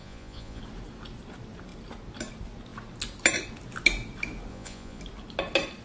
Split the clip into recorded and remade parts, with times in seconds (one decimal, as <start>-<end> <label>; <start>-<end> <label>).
0.0-0.6 remade; 0.6-4.5 recorded; 4.5-5.0 remade; 5.0-5.8 recorded